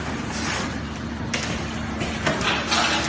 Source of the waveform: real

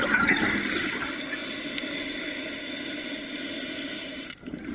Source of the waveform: real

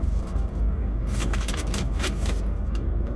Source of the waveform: fake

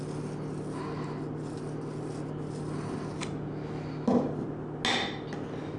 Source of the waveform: real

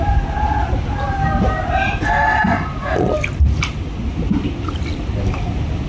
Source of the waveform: real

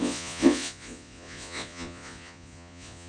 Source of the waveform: fake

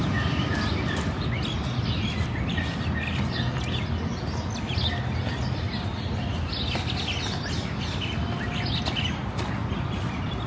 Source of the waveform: real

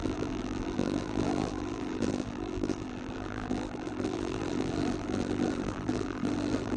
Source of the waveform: fake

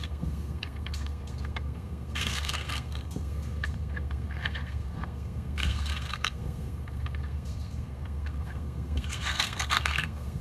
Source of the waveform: fake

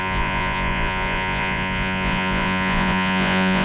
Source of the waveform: fake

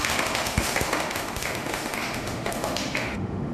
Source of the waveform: fake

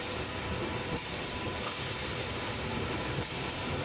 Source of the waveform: fake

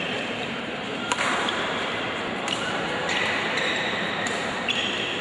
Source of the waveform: fake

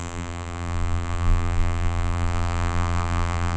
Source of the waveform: fake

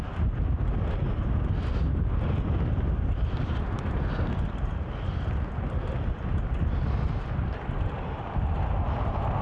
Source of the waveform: real